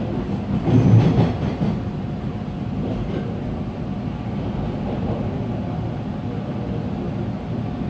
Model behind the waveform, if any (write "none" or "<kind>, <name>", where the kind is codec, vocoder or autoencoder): none